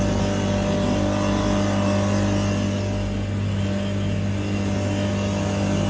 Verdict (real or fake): real